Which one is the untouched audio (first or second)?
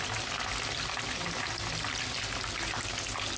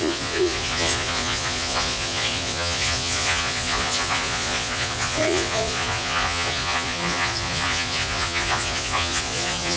first